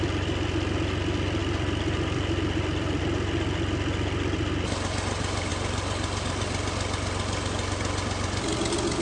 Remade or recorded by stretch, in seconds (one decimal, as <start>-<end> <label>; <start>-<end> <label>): 0.0-1.4 recorded; 1.4-3.0 remade; 3.0-5.5 recorded; 5.5-6.3 remade; 6.3-9.0 recorded